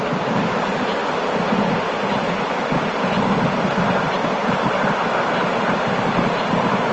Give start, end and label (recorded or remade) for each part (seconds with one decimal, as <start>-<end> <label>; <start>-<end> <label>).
0.0-6.9 recorded